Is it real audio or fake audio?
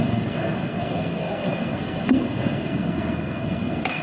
fake